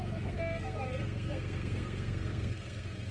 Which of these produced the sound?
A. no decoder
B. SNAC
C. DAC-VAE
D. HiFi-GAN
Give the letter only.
B